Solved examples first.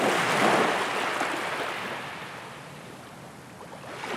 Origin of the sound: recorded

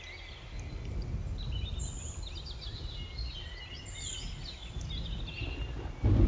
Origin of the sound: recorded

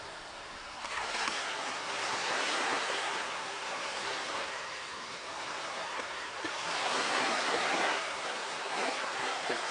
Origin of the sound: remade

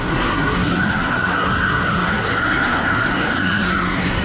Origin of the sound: remade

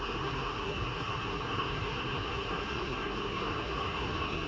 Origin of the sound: remade